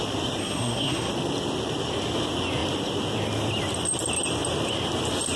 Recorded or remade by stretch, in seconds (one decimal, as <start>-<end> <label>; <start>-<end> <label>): 0.0-0.4 recorded; 0.4-1.1 remade; 1.1-5.4 recorded